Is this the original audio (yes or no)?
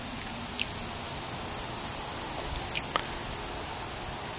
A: yes